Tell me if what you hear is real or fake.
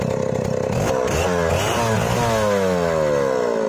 real